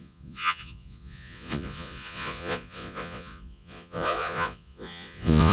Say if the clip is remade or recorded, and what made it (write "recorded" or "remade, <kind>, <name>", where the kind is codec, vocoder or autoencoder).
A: remade, vocoder, Vocos